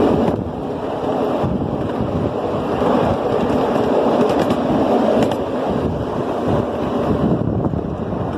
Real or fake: real